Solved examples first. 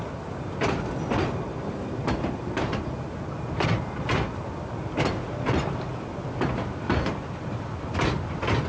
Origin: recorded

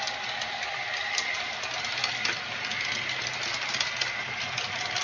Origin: recorded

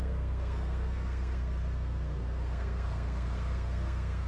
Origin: remade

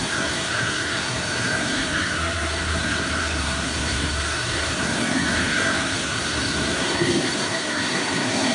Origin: remade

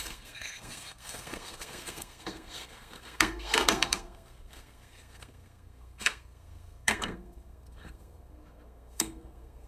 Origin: remade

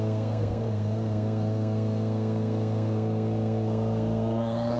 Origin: remade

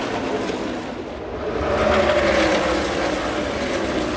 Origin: recorded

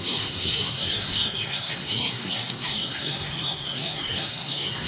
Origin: remade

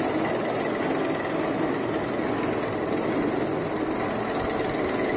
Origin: recorded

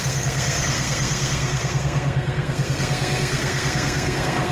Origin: remade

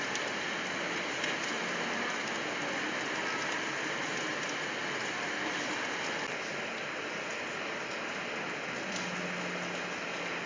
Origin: recorded